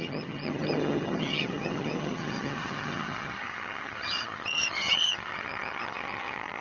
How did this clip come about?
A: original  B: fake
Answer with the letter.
B